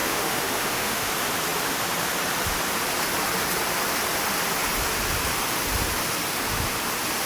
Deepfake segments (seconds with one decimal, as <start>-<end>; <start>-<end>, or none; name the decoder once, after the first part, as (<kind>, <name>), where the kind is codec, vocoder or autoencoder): 0.0-1.1 (autoencoder, DAC-VAE)